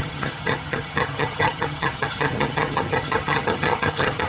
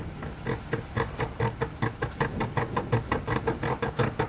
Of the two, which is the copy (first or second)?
first